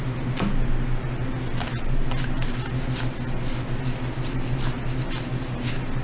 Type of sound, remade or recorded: recorded